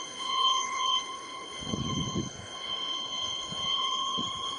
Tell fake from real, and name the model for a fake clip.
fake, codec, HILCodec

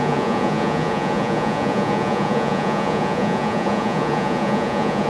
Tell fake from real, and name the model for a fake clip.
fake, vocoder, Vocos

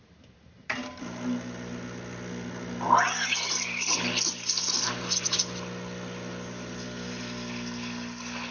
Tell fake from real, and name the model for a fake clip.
real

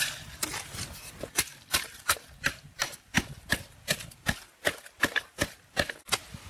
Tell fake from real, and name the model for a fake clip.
fake, vocoder, BigVGAN v2